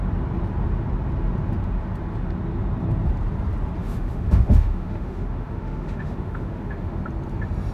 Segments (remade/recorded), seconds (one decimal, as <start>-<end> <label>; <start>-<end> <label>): 0.0-3.8 recorded; 3.8-7.0 remade; 7.0-7.7 recorded